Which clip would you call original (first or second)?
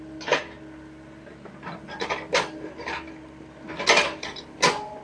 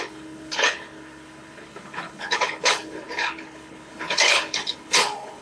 first